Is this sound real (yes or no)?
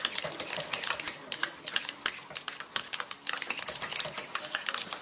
yes